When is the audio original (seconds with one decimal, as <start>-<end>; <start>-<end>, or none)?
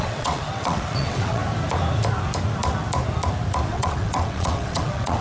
1.4-3.7